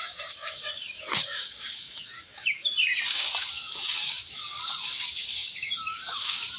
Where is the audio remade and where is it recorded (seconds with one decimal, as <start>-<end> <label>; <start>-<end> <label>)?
0.0-2.6 remade; 2.6-3.1 recorded; 3.1-6.6 remade